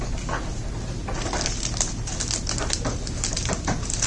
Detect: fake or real real